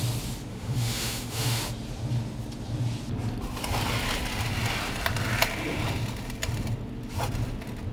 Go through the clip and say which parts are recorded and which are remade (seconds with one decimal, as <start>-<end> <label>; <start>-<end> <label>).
0.0-0.5 recorded; 0.5-1.6 remade; 1.6-7.9 recorded